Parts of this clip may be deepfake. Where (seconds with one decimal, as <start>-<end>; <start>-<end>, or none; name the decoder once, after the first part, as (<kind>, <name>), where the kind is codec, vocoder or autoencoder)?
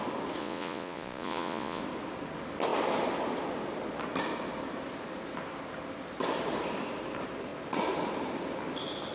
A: 0.4-1.8 (vocoder, Vocos)